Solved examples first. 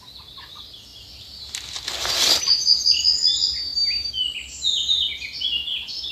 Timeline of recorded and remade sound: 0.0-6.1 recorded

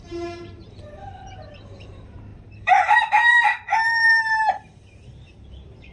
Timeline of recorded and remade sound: 0.0-5.9 remade

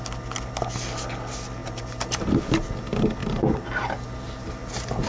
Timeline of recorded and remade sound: 0.0-1.6 recorded; 1.6-2.4 remade; 2.4-3.2 recorded; 3.2-4.5 remade; 4.5-5.1 recorded